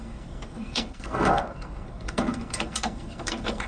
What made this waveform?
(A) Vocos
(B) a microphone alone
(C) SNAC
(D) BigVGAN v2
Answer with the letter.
C